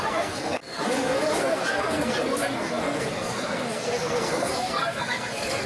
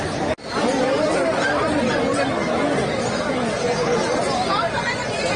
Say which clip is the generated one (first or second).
first